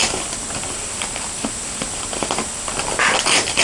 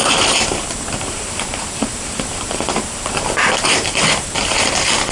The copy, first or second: second